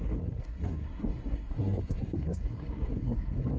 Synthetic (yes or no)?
yes